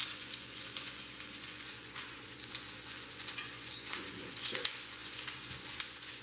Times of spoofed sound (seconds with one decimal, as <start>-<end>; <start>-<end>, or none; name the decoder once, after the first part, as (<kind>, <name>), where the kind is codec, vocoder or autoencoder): 0.0-6.2 (vocoder, Vocos)